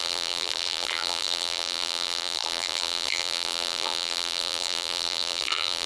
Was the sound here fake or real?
fake